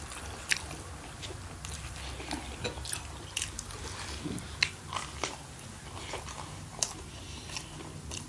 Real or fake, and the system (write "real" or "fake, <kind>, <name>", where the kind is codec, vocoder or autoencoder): real